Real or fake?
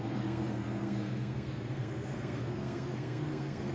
fake